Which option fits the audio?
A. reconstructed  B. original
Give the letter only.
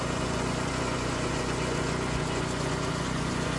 A